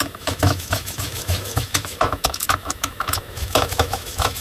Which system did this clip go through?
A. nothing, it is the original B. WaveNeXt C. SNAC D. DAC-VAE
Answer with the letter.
D